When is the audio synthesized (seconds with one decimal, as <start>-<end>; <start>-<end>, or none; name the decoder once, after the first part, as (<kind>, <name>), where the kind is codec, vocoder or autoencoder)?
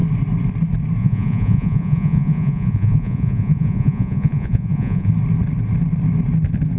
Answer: 1.0-5.1 (vocoder, Vocos)